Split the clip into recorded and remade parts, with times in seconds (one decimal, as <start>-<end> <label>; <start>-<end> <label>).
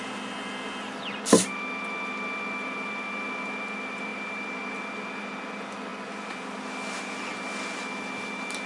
0.0-5.9 remade; 5.9-8.7 recorded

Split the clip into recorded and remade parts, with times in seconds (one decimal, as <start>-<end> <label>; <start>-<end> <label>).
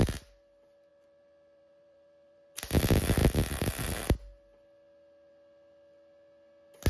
0.0-0.9 recorded; 0.9-2.8 remade; 2.8-6.9 recorded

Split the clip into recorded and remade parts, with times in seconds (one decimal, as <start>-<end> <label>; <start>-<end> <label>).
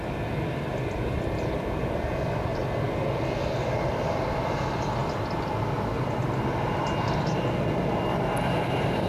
0.0-2.6 remade; 2.6-3.5 recorded; 3.5-9.1 remade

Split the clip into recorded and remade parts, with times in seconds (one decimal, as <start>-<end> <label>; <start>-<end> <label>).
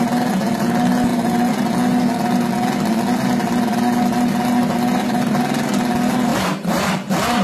0.0-1.1 recorded; 1.1-1.7 remade; 1.7-6.3 recorded; 6.3-6.9 remade; 6.9-7.4 recorded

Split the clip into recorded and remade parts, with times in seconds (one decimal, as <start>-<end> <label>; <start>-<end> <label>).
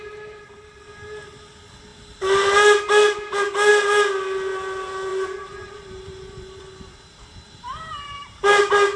0.0-5.1 recorded; 5.1-9.0 remade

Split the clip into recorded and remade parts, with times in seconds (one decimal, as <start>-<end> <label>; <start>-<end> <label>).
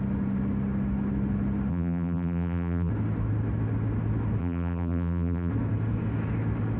0.0-1.7 recorded; 1.7-2.9 remade; 2.9-4.4 recorded; 4.4-5.5 remade; 5.5-6.8 recorded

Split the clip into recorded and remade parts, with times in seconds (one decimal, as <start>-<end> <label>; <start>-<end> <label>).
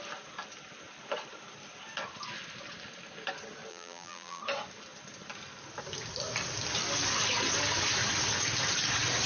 0.0-3.7 recorded; 3.7-4.4 remade; 4.4-9.3 recorded